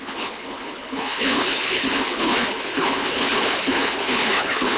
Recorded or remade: remade